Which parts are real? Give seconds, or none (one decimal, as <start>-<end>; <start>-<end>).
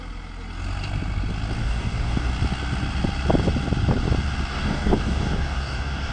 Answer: 0.0-1.6; 2.3-4.5